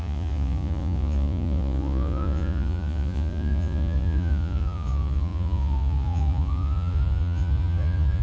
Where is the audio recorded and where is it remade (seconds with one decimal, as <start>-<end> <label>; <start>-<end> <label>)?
0.0-8.2 remade